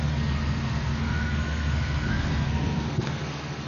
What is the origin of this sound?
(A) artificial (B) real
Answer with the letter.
A